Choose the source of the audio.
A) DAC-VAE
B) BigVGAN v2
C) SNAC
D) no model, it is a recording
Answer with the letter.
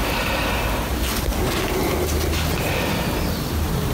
D